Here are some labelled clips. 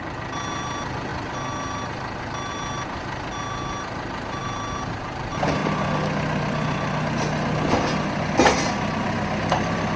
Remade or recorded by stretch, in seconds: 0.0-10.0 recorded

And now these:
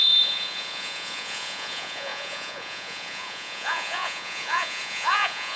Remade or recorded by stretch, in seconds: 0.0-5.6 remade